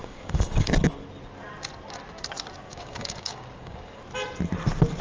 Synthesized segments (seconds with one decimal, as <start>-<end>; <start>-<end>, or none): 0.0-0.7; 2.7-4.0